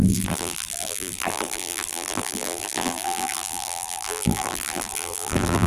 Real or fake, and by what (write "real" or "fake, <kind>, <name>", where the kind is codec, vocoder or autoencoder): fake, vocoder, BigVGAN v2